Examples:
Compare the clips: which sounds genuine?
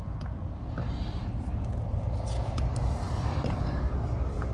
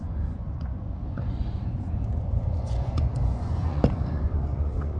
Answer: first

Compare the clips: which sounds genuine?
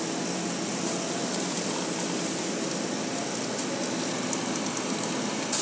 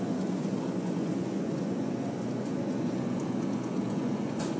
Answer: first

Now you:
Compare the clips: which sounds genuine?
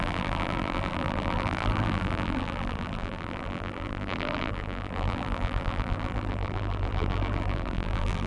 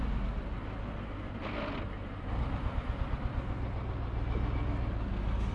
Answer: second